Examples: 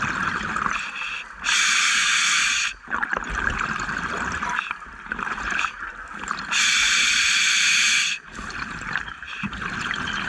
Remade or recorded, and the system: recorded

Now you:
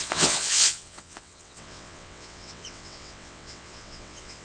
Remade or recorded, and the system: remade, vocoder, WaveNeXt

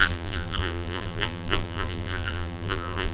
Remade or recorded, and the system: remade, vocoder, BigVGAN v2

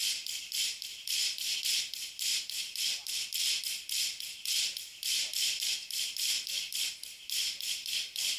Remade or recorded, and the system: recorded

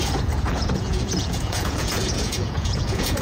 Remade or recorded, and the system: remade, vocoder, Vocos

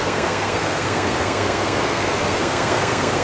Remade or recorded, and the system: remade, codec, SNAC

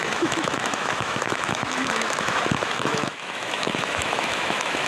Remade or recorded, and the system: remade, autoencoder, DAC-VAE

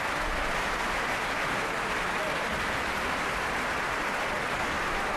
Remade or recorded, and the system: recorded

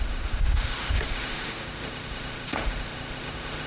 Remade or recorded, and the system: remade, autoencoder, DAC-VAE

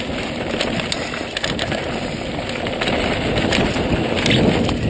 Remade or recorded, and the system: recorded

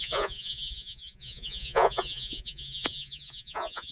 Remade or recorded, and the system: remade, vocoder, Vocos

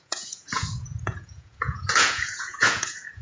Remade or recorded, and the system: remade, vocoder, Vocos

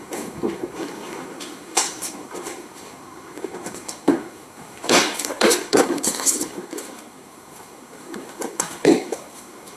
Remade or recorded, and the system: remade, codec, SNAC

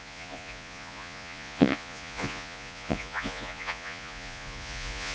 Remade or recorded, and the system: remade, vocoder, Vocos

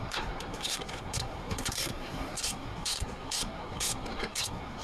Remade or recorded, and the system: remade, codec, SNAC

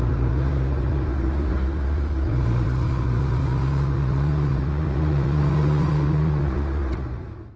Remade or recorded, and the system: remade, vocoder, Vocos